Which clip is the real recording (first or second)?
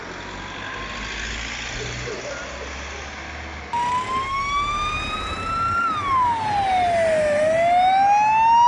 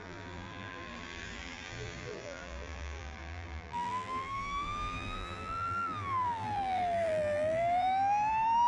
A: first